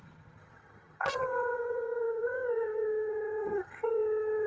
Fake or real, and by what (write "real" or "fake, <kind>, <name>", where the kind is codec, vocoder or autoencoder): fake, vocoder, HiFi-GAN